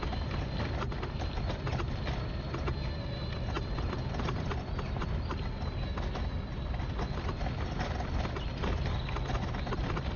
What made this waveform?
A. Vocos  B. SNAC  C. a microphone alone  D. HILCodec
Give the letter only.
C